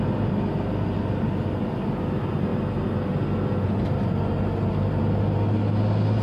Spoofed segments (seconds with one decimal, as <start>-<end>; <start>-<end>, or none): none